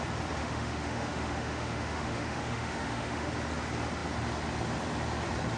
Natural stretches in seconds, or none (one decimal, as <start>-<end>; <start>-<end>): 0.0-0.4; 3.3-5.6